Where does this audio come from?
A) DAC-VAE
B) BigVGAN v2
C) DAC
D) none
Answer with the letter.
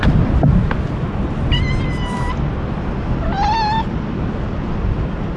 D